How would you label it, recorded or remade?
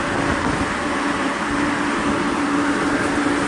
recorded